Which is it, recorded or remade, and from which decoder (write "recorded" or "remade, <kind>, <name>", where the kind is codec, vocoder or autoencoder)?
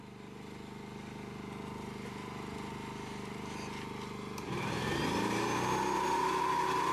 recorded